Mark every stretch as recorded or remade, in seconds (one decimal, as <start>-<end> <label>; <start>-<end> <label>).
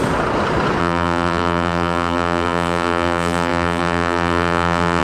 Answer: 0.0-0.8 recorded; 0.8-5.0 remade